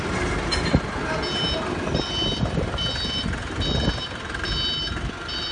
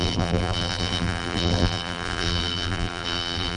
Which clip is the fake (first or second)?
second